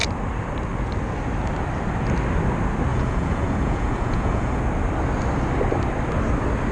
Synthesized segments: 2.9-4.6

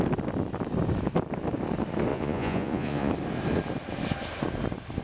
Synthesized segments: 2.1-3.1

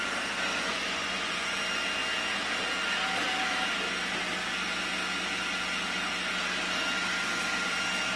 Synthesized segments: 0.5-1.6

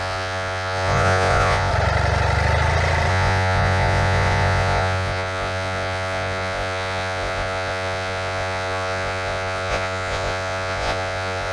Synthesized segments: 0.0-1.7; 3.1-11.5

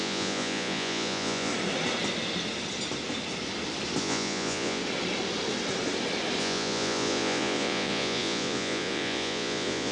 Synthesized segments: 0.0-1.5; 4.0-4.8; 6.4-9.9